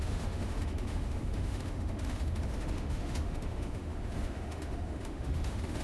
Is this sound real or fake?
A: fake